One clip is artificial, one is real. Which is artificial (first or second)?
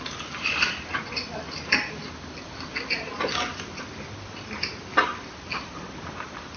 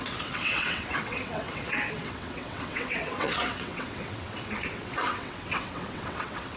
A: second